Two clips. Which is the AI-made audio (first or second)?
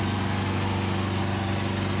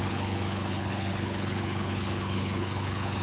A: second